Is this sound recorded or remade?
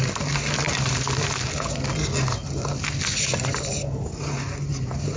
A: recorded